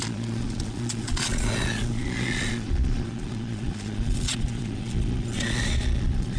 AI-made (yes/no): yes